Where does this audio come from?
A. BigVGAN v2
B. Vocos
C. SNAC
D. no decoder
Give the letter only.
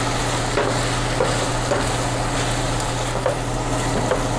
D